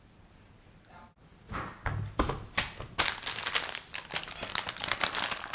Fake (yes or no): no